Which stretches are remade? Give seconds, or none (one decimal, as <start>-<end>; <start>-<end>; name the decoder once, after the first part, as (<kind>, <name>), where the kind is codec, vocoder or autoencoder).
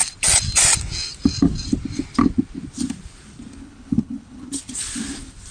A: 3.6-4.7 (codec, HILCodec)